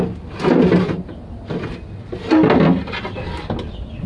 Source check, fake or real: real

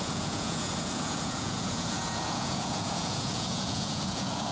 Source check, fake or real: fake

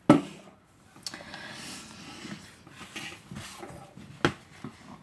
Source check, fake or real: real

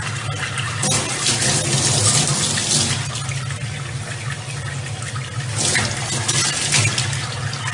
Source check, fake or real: real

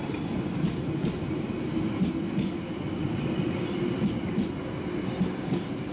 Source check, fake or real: real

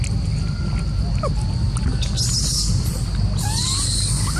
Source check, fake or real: real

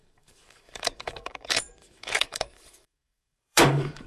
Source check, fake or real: fake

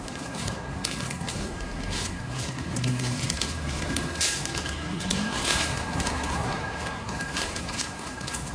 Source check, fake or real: fake